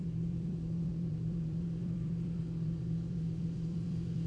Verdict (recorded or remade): remade